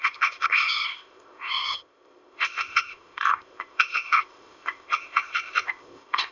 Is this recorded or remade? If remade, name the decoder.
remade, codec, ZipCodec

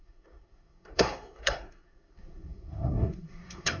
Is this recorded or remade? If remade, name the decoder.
remade, codec, SNAC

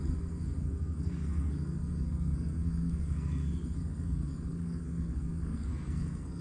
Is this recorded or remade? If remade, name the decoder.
remade, codec, SNAC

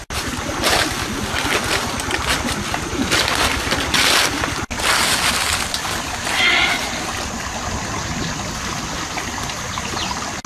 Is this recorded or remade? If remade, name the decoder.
recorded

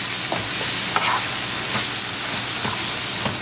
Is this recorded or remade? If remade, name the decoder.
recorded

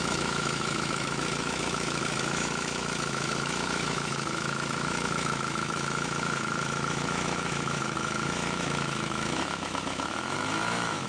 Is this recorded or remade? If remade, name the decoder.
remade, autoencoder, DAC-VAE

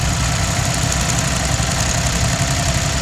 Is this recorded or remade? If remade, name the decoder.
recorded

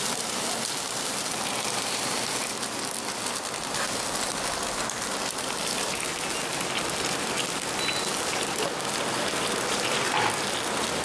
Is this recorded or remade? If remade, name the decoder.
recorded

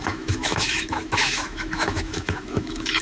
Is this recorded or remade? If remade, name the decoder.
remade, autoencoder, DAC-VAE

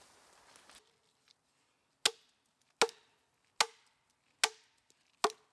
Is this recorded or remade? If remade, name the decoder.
recorded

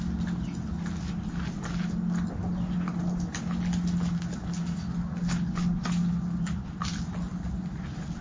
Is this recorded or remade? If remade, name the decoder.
recorded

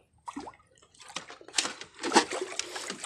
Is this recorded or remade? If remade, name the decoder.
recorded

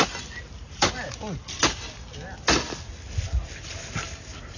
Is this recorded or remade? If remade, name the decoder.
recorded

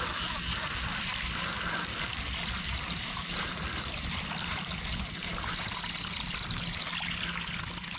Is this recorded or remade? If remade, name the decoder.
recorded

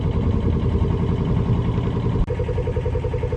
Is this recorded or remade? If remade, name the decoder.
recorded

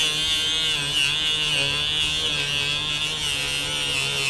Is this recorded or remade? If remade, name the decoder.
recorded